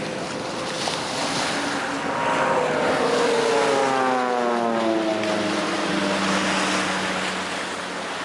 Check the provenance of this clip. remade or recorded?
recorded